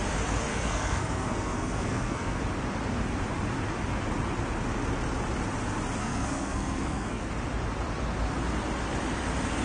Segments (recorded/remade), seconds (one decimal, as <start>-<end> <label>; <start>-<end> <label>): 0.0-0.5 recorded; 0.5-2.4 remade; 2.4-6.0 recorded; 6.0-7.3 remade; 7.3-9.6 recorded